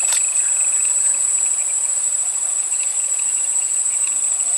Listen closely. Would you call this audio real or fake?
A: fake